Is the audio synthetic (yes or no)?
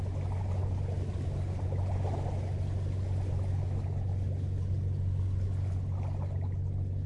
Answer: no